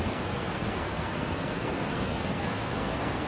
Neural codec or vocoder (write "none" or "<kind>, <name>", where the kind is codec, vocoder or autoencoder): codec, SNAC